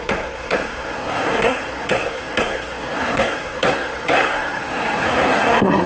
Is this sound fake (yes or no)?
yes